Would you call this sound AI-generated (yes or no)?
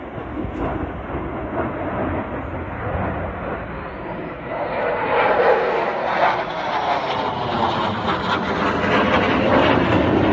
no